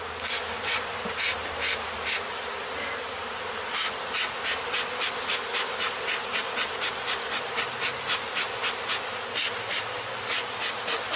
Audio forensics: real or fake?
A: real